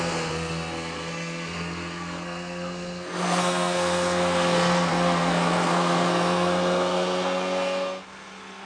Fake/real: fake